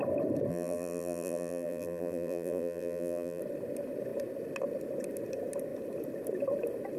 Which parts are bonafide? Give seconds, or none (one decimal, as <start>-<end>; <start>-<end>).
0.0-0.5; 3.4-7.0